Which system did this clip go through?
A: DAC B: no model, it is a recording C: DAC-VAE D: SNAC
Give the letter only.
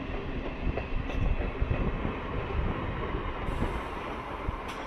B